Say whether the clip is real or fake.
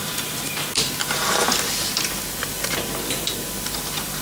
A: real